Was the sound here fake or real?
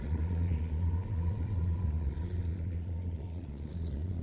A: fake